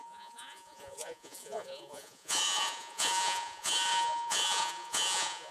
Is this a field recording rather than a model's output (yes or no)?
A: no